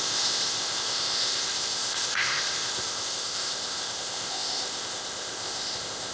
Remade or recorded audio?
remade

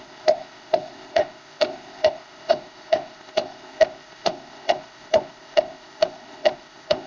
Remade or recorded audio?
remade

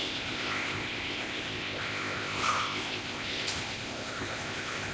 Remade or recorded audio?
remade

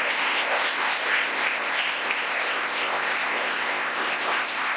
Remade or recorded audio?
remade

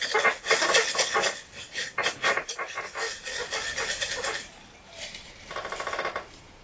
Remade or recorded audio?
recorded